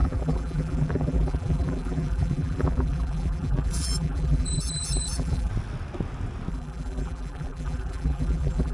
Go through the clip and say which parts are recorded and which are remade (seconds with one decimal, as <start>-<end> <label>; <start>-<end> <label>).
0.0-5.5 remade; 5.5-6.5 recorded; 6.5-8.7 remade